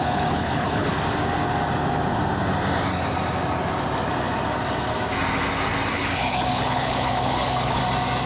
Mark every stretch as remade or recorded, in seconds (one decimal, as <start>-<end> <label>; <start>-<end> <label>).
0.0-0.9 remade; 0.9-5.9 recorded; 5.9-7.8 remade; 7.8-8.3 recorded